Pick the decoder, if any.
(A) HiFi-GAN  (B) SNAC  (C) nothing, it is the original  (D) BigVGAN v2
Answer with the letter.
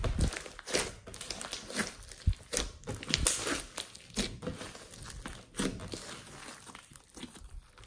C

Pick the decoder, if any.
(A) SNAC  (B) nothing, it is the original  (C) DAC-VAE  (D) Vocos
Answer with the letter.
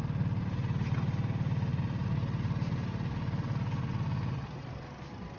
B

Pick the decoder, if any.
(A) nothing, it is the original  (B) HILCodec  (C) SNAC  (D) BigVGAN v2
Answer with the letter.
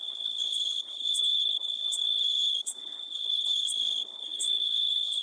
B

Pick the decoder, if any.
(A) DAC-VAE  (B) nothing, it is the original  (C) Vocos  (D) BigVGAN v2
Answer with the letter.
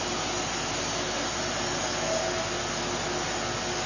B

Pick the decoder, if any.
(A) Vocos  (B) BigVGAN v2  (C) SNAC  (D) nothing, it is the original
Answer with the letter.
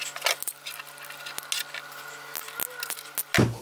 D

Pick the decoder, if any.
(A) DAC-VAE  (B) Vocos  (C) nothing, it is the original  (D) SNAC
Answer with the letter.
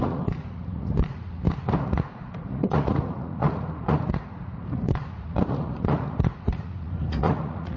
B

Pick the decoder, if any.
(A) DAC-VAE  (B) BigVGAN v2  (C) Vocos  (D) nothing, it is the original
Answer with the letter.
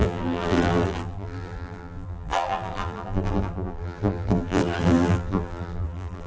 B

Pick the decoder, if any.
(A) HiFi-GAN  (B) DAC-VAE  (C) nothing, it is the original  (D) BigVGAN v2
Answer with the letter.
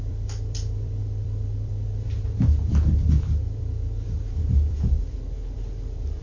D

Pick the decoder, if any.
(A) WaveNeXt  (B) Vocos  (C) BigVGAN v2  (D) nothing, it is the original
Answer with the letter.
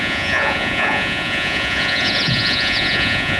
B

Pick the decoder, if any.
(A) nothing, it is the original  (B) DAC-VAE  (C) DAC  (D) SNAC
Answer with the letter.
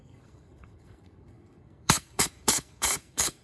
D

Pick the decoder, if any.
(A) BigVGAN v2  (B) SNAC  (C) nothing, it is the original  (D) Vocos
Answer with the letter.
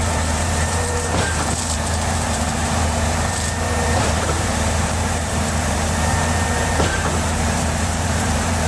A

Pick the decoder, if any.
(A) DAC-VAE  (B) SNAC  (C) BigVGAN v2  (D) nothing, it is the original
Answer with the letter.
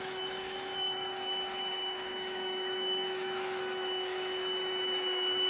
A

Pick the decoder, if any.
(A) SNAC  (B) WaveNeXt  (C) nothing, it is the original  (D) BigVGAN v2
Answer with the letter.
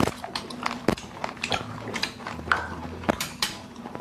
D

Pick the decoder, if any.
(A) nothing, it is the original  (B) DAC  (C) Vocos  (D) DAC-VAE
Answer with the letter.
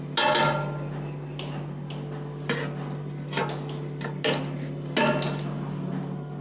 A